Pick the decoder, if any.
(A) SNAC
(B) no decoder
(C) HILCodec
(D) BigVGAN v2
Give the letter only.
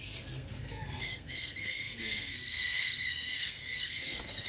A